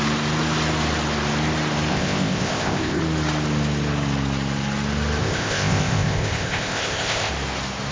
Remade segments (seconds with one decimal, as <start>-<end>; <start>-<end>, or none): 1.9-3.0; 5.2-7.3